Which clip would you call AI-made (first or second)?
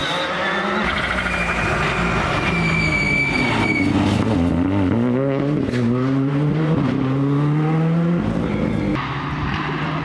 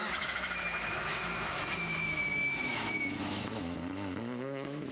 second